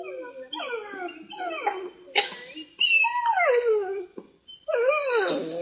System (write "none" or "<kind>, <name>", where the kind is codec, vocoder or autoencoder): none